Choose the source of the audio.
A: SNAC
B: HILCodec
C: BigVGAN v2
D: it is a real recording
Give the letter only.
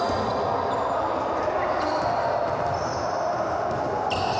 D